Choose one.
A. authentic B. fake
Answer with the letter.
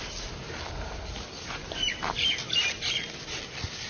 A